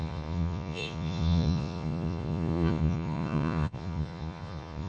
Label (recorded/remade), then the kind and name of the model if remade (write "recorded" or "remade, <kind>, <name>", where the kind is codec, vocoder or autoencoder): remade, vocoder, Vocos